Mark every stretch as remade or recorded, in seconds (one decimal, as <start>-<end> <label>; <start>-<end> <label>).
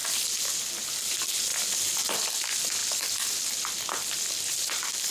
0.0-5.1 recorded